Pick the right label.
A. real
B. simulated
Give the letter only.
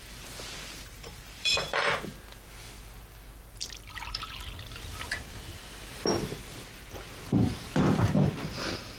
B